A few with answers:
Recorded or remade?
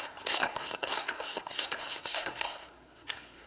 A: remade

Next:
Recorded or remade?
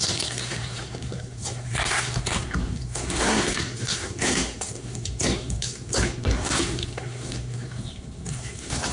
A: remade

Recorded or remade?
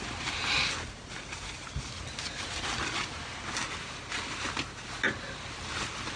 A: recorded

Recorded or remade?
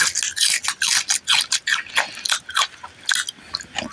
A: recorded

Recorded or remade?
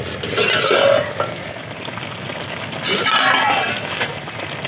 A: recorded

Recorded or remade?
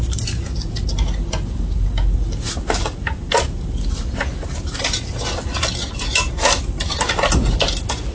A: recorded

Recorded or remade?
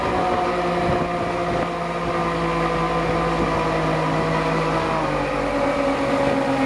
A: recorded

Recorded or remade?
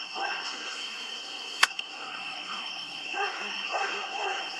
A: remade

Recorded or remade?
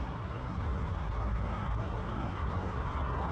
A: remade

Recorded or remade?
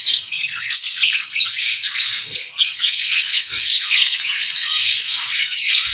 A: remade